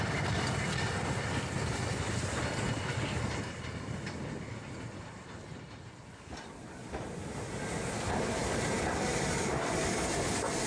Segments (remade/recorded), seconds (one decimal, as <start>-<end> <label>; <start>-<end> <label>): 0.0-10.7 recorded